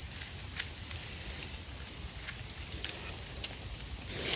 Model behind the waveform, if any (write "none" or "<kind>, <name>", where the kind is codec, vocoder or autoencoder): none